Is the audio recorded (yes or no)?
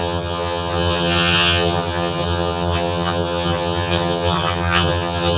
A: no